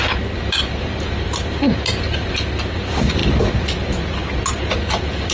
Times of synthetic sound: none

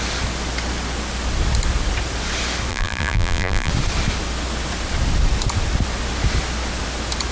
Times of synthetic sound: 2.7-3.7 (vocoder, BigVGAN v2)

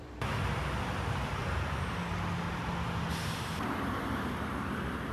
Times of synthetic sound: none

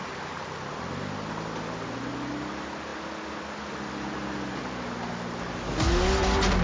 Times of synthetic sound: none

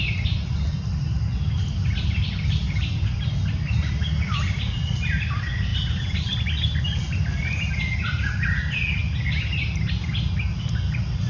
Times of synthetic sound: none

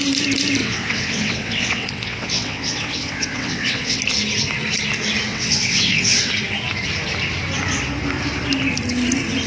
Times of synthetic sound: 0.6-4.0 (vocoder, WaveNeXt); 5.3-6.3

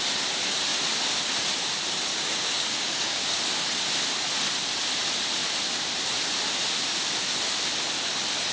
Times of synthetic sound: 2.1-3.4 (codec, DAC)